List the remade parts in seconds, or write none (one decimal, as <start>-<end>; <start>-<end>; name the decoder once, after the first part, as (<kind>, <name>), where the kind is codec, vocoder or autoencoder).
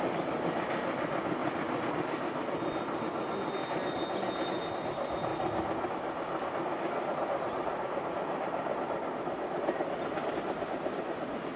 none